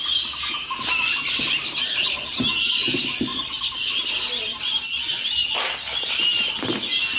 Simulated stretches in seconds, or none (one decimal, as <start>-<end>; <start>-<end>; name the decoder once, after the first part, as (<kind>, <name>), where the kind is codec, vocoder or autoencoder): none